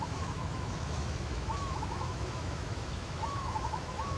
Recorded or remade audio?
remade